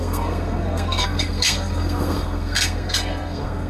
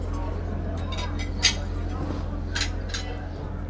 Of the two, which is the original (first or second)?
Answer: second